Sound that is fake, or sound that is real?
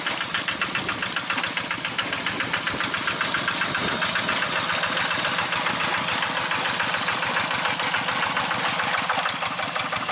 real